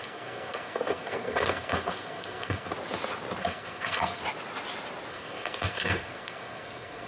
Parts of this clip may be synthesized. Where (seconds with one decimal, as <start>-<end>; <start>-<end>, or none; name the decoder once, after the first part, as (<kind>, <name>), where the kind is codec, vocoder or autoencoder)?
0.0-2.7 (codec, SNAC); 3.4-4.2; 5.1-7.1